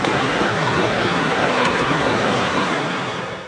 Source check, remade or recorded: remade